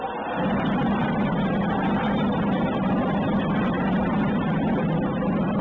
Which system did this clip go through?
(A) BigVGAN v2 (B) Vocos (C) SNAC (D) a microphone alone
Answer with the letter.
D